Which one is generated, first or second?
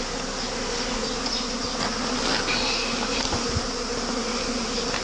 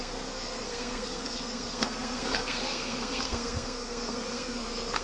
second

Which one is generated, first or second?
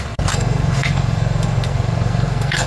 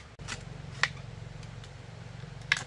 first